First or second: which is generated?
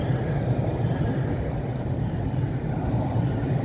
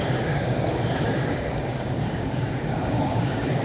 second